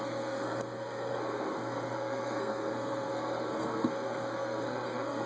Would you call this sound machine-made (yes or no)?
yes